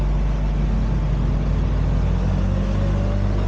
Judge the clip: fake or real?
real